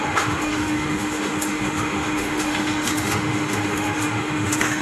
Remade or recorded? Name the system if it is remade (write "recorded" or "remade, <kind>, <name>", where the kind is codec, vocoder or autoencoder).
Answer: remade, autoencoder, DAC-VAE